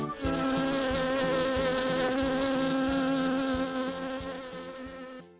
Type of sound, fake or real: real